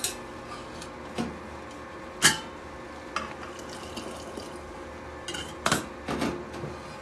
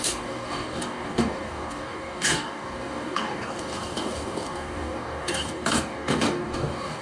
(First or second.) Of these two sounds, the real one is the first